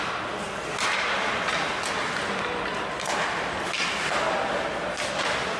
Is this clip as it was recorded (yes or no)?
yes